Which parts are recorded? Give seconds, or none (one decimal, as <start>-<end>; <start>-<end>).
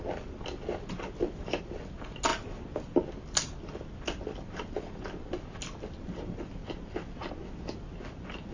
0.0-8.5